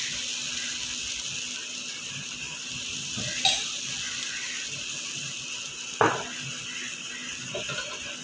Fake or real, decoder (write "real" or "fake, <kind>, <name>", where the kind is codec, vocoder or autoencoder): real